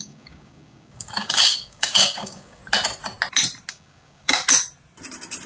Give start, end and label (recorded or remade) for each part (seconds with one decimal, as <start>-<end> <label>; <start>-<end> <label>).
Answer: 0.0-2.6 remade; 2.6-3.7 recorded; 3.7-4.4 remade; 4.4-5.5 recorded